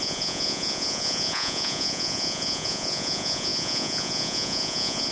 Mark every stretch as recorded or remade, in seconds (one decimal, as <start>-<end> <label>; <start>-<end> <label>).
0.0-5.1 remade